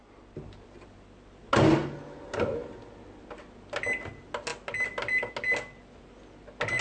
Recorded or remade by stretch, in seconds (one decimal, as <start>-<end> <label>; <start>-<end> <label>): 0.0-6.8 recorded